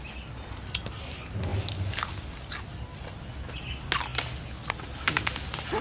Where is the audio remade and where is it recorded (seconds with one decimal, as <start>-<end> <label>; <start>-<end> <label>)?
0.0-5.8 recorded